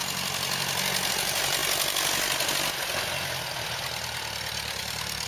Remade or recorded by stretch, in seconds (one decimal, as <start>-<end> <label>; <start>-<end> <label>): 0.0-1.1 recorded; 1.1-1.6 remade; 1.6-4.8 recorded; 4.8-5.3 remade